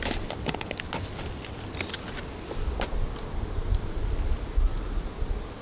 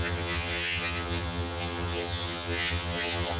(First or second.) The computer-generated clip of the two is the second